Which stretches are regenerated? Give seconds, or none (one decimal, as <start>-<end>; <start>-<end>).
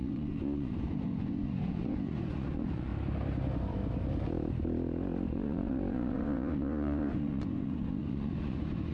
0.0-2.9; 5.3-8.9